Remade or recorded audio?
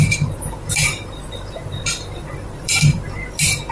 remade